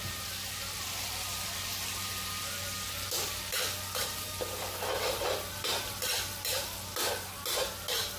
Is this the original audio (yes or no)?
yes